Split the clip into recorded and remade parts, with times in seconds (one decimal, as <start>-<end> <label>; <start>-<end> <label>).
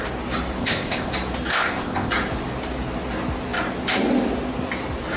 0.0-0.6 recorded; 0.6-1.1 remade; 1.1-1.5 recorded; 1.5-2.1 remade; 2.1-5.2 recorded